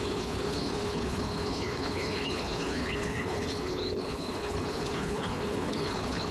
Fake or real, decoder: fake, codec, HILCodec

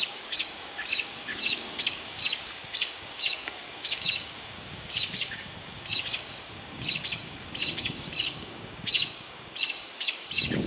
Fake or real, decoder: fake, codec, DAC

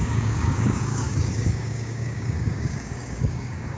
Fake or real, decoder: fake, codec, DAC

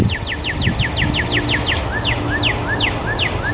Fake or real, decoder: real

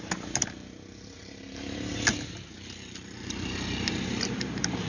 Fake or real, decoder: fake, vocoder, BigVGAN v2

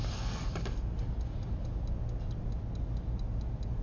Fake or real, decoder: real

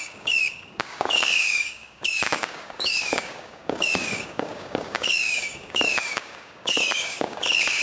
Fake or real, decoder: fake, codec, DAC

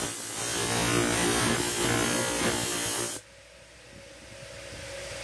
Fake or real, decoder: real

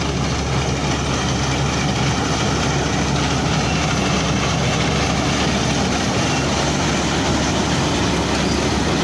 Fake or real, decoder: real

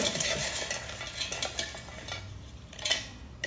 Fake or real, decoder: real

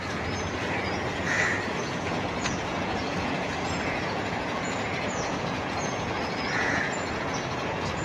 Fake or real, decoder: fake, vocoder, Vocos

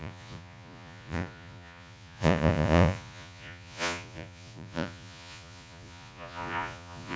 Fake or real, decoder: fake, vocoder, Vocos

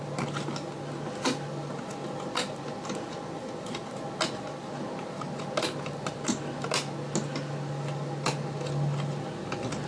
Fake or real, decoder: real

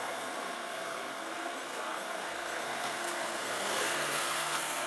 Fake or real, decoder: fake, codec, SNAC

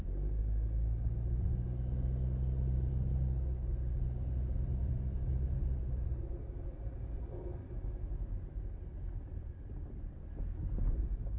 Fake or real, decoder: real